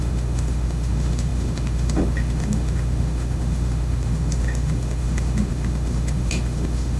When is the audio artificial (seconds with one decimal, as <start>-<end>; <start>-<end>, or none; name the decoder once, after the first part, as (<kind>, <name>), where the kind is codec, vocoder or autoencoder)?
0.0-7.0 (autoencoder, DAC-VAE)